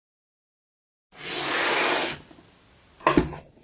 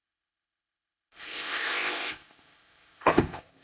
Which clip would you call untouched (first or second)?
first